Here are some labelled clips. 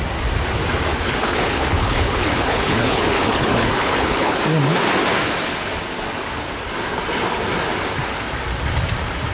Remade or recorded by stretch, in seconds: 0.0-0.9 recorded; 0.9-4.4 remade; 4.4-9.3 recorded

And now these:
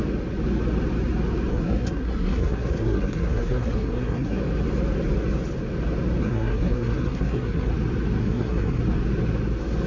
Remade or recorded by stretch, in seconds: 0.0-1.5 recorded; 1.5-4.4 remade; 4.4-6.2 recorded; 6.2-7.7 remade; 7.7-8.2 recorded; 8.2-8.8 remade; 8.8-9.9 recorded